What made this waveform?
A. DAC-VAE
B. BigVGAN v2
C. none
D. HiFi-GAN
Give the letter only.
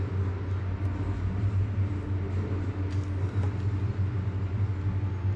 C